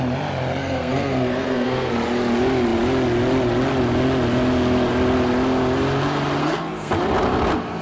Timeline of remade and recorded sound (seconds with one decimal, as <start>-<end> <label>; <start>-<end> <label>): 0.0-0.6 recorded; 0.6-1.9 remade; 1.9-6.4 recorded; 6.4-6.9 remade; 6.9-7.8 recorded

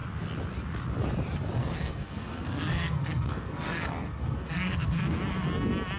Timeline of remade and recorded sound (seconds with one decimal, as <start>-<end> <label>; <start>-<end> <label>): 0.0-1.6 recorded; 1.6-5.2 remade; 5.2-6.0 recorded

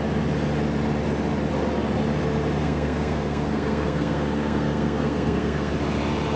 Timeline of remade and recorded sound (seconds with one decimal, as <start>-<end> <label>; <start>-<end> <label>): 0.0-2.6 recorded; 2.6-5.7 remade; 5.7-6.4 recorded

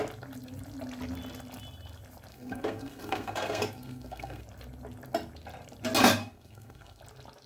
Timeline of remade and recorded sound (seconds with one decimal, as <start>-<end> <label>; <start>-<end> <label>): 0.0-2.3 recorded; 2.3-4.4 remade; 4.4-6.2 recorded; 6.2-7.0 remade; 7.0-7.5 recorded

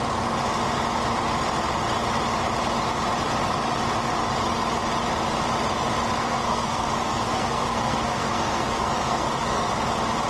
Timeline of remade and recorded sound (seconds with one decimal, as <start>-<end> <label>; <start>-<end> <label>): 0.0-6.2 recorded; 6.2-9.7 remade; 9.7-10.3 recorded

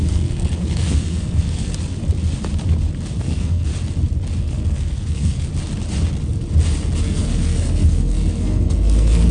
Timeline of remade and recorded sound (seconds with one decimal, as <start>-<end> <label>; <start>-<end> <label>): 0.0-1.7 remade; 1.7-3.2 recorded; 3.2-3.7 remade; 3.7-4.4 recorded; 4.4-5.5 remade; 5.5-7.0 recorded; 7.0-9.3 remade